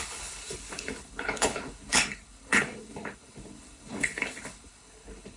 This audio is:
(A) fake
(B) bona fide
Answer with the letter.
A